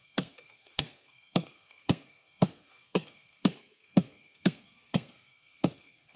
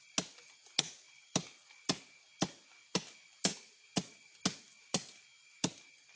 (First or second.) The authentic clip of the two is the second